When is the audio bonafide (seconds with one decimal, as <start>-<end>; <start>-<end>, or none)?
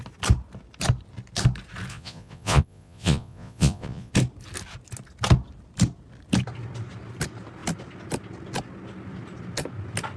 0.0-1.9; 4.1-10.2